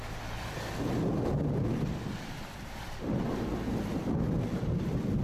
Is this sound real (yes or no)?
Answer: yes